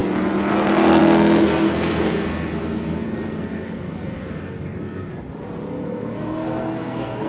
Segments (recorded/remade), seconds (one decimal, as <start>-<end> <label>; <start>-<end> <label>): 0.0-0.5 recorded; 0.5-5.1 remade; 5.1-5.7 recorded; 5.7-7.3 remade